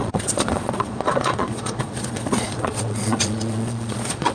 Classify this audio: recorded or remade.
remade